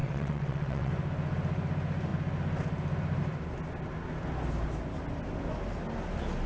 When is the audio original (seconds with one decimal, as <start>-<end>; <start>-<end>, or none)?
0.9-6.5